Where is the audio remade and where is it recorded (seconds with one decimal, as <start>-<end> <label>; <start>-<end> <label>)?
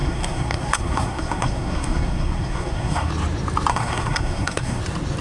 0.0-3.1 remade; 3.1-3.7 recorded; 3.7-4.8 remade; 4.8-5.2 recorded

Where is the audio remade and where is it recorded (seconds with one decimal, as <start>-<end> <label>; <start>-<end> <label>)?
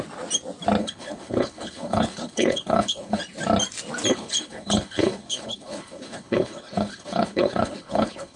0.0-0.8 recorded; 0.8-3.2 remade; 3.2-4.1 recorded; 4.1-8.4 remade